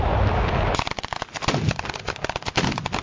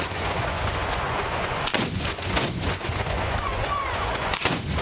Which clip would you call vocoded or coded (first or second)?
second